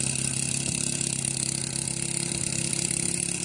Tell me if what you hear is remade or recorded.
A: recorded